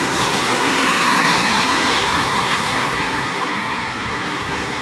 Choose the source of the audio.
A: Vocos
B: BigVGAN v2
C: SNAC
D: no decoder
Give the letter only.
C